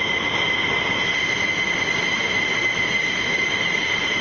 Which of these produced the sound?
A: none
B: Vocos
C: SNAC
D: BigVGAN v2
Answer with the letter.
A